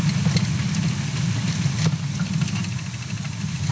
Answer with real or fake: real